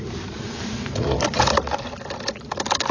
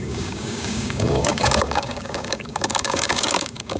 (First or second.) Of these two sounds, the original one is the first